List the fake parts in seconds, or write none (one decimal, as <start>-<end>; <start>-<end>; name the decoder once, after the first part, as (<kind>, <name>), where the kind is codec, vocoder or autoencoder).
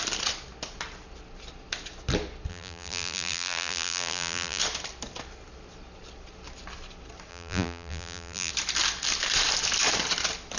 2.5-4.6 (vocoder, BigVGAN v2); 7.3-8.5